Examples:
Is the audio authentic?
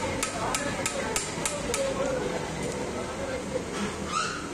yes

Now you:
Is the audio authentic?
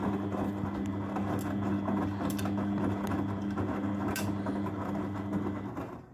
yes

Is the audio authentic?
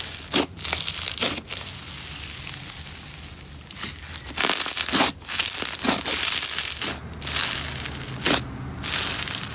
yes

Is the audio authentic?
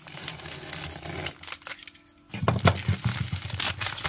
yes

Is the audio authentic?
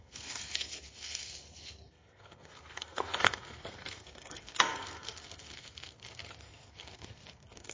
no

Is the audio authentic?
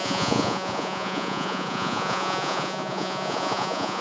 no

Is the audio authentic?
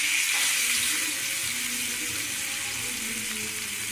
yes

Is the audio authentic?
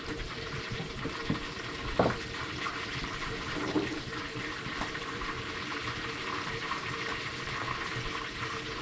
no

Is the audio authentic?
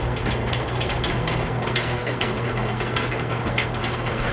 no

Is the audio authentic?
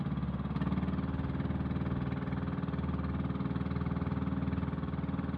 yes